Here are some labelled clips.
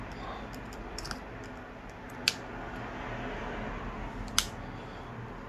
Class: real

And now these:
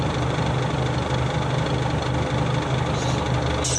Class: real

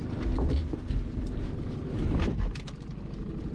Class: real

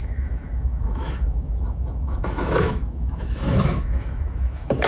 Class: fake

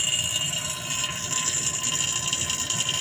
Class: real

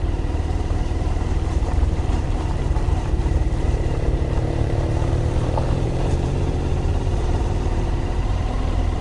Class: fake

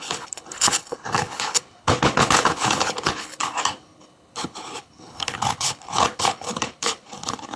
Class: fake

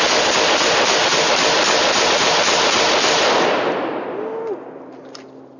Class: real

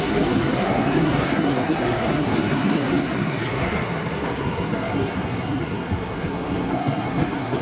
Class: fake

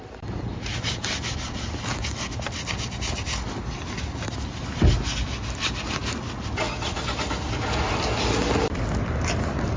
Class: real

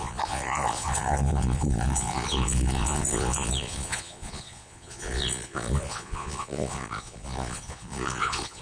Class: fake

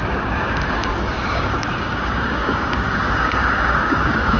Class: fake